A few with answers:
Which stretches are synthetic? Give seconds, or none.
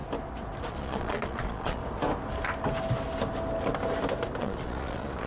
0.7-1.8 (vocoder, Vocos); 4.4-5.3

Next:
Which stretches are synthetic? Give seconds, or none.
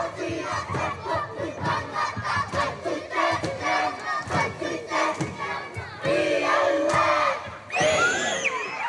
none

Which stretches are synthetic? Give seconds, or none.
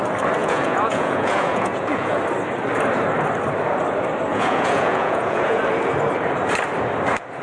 0.4-2.2 (vocoder, Vocos); 4.3-5.6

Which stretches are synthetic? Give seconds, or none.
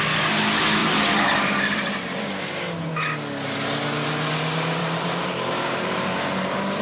0.8-2.2 (vocoder, BigVGAN v2); 4.8-6.8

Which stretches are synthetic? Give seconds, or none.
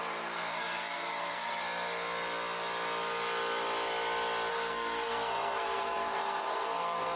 0.0-1.6 (codec, SNAC); 4.5-7.2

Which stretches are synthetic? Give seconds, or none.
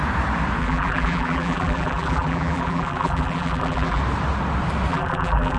0.6-4.0 (vocoder, BigVGAN v2); 4.9-5.6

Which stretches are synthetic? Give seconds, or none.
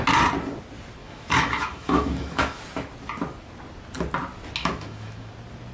1.0-2.6 (autoencoder, DAC-VAE); 4.6-5.3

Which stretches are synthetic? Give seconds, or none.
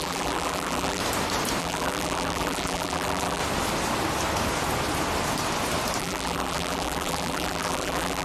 0.0-1.0 (vocoder, BigVGAN v2); 1.6-3.4; 6.0-8.2